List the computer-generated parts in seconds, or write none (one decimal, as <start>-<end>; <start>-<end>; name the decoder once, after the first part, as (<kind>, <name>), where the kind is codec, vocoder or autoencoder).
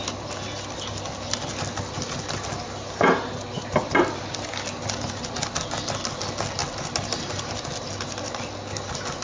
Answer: none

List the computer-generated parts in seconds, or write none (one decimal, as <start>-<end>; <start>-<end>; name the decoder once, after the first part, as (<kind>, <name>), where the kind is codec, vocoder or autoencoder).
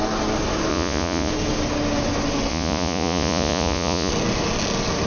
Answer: 0.7-1.3 (vocoder, Vocos); 2.5-4.1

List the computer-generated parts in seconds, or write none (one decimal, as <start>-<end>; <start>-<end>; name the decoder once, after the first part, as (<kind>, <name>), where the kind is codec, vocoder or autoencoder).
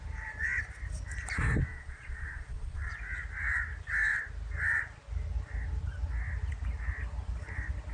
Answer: 1.7-2.9 (vocoder, Vocos)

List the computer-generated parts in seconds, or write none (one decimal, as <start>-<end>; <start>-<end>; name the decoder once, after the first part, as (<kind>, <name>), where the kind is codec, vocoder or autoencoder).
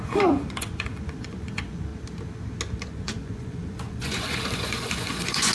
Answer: 0.0-1.9 (vocoder, Vocos); 2.9-5.5